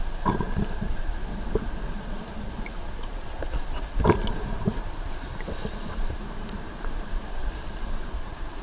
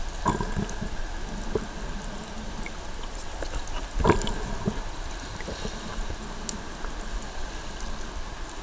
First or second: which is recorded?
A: second